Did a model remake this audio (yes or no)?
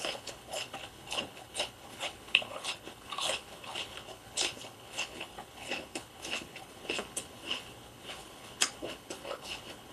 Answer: yes